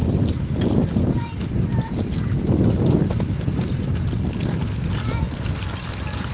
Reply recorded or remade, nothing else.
recorded